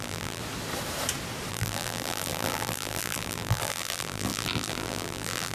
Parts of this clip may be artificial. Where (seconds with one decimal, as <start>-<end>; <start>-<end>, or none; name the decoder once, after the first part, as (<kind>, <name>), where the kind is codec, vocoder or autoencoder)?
0.0-0.4 (vocoder, BigVGAN v2); 1.5-5.5